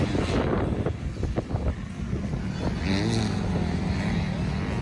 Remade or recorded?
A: recorded